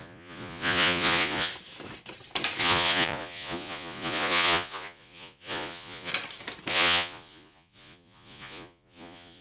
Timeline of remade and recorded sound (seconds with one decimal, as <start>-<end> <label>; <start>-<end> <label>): 0.0-1.5 remade; 1.5-2.6 recorded; 2.6-6.1 remade; 6.1-6.7 recorded; 6.7-9.4 remade